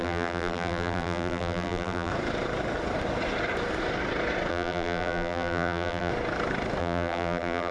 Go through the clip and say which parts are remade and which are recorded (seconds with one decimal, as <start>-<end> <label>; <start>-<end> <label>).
0.0-2.1 remade; 2.1-4.5 recorded; 4.5-6.1 remade; 6.1-6.8 recorded; 6.8-7.7 remade